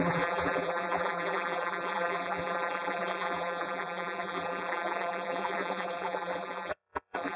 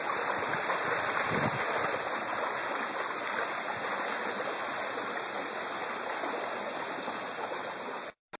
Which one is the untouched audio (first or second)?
second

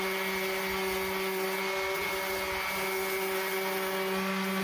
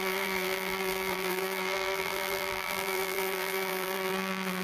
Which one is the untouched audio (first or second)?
first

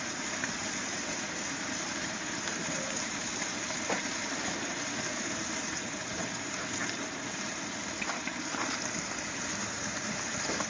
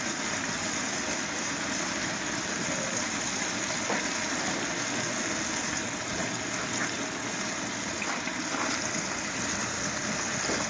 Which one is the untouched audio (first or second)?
second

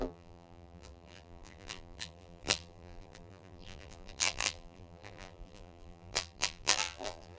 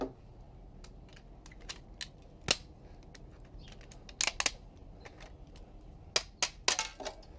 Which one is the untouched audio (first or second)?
second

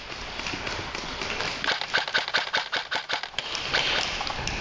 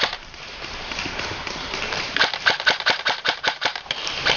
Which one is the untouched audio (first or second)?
first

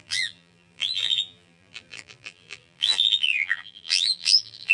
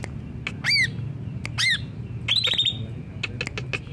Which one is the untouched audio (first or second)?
second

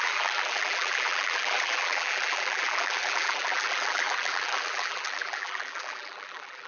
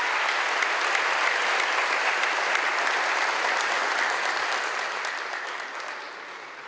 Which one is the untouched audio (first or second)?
second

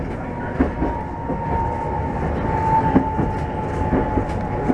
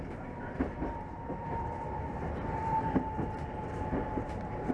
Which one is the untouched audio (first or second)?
first